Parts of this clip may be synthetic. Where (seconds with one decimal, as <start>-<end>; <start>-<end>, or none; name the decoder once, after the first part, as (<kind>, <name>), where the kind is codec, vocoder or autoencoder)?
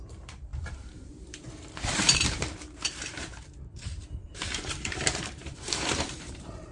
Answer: 0.0-6.7 (vocoder, BigVGAN v2)